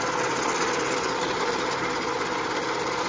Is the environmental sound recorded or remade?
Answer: recorded